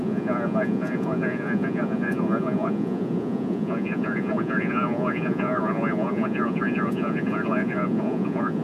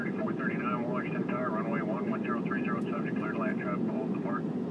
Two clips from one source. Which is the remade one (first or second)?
first